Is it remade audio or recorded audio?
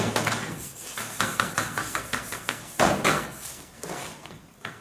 remade